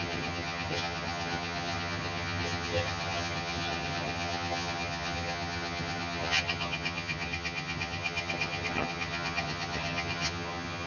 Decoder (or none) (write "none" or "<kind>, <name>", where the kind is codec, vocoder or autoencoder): vocoder, HiFi-GAN